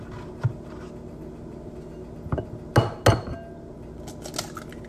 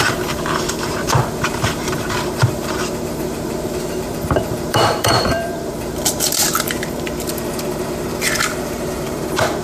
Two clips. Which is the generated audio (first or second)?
second